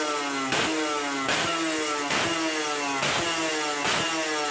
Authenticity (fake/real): real